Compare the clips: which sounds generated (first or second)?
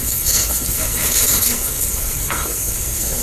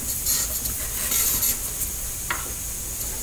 first